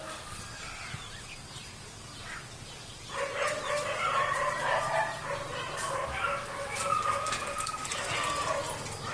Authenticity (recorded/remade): recorded